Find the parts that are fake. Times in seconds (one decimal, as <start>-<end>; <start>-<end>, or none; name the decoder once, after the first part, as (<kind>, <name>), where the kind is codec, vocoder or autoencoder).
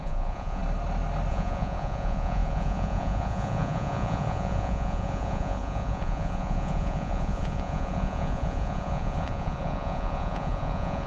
0.0-0.6 (vocoder, Vocos); 1.3-11.1